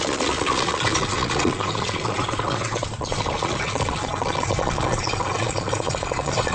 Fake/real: fake